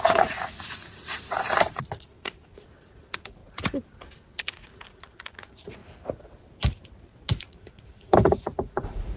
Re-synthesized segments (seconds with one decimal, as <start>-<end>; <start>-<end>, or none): 0.0-3.4; 4.4-5.8; 7.3-9.2